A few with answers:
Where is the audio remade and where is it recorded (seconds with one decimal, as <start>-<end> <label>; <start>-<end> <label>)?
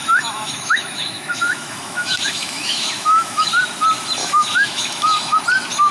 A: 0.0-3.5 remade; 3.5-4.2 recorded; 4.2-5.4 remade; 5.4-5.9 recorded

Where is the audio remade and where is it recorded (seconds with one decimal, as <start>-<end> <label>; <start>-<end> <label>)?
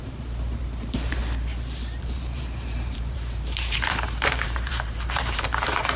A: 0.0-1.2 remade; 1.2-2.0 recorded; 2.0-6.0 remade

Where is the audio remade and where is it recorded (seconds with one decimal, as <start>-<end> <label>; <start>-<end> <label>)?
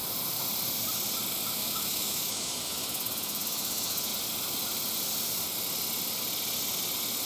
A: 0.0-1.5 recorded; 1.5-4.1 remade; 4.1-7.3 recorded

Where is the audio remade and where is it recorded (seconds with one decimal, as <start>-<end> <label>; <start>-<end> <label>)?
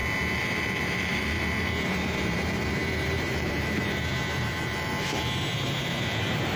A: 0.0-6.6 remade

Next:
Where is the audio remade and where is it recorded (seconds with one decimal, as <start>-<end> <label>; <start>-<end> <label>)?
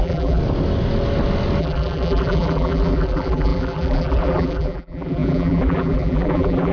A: 0.0-0.4 remade; 0.4-1.6 recorded; 1.6-6.7 remade